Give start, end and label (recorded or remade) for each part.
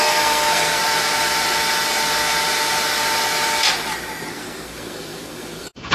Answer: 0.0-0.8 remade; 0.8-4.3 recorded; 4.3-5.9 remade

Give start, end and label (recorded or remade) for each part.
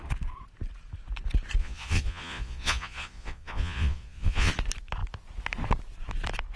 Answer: 0.0-1.6 recorded; 1.6-4.5 remade; 4.5-6.6 recorded